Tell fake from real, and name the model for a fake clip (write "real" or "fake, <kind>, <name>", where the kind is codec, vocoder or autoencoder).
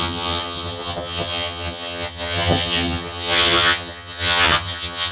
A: fake, vocoder, HiFi-GAN